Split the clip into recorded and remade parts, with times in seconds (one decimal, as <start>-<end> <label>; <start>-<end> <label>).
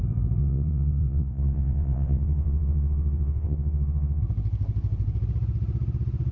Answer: 0.0-0.4 recorded; 0.4-4.2 remade; 4.2-6.3 recorded